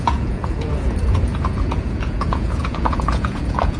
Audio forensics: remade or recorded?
remade